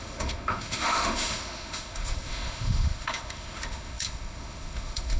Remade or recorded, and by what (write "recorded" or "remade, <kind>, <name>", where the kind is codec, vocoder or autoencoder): remade, autoencoder, DAC-VAE